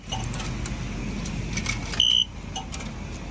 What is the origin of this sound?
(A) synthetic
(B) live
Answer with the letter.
B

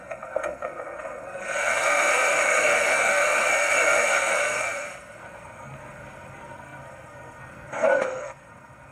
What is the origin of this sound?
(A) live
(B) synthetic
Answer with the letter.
B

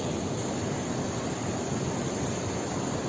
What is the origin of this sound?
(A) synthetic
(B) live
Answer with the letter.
B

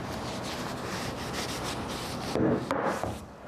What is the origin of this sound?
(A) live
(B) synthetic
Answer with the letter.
A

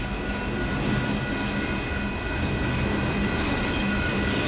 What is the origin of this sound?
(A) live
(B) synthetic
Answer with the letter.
A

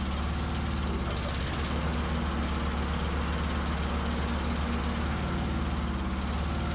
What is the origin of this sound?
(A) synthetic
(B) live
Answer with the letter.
B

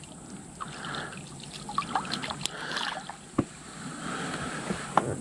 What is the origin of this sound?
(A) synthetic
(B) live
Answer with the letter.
B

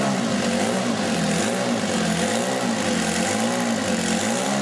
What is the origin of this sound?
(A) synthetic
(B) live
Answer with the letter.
B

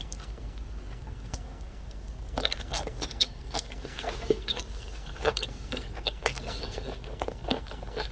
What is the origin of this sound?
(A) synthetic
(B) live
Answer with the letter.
A